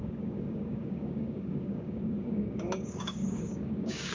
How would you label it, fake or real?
fake